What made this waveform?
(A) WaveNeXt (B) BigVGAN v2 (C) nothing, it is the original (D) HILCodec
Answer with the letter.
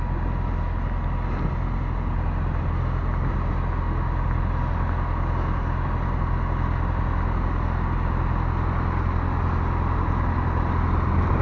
C